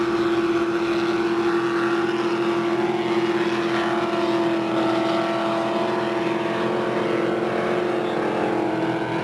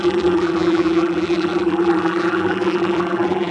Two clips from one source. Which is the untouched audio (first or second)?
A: first